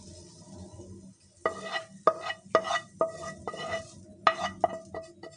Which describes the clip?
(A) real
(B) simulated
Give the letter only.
A